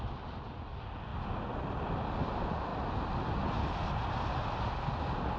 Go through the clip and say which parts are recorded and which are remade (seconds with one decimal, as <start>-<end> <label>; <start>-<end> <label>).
0.0-5.4 recorded